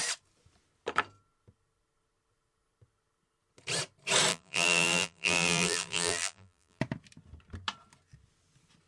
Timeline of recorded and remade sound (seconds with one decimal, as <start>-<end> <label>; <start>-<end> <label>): 0.0-4.3 recorded; 4.3-6.8 remade; 6.8-8.9 recorded